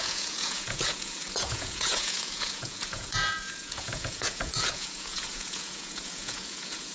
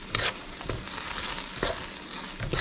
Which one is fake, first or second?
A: first